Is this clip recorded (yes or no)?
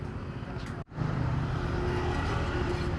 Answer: yes